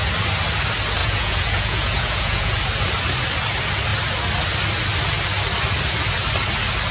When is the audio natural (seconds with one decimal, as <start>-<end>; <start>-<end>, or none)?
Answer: 0.0-1.0; 2.6-6.9

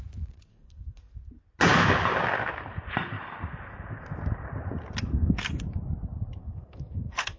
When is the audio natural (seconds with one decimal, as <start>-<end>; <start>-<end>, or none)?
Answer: 0.0-0.5; 1.1-5.1; 5.6-6.4